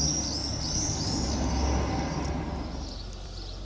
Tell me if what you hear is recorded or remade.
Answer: recorded